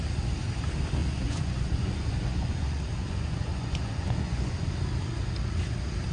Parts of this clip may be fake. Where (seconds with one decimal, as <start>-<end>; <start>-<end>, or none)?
1.0-4.7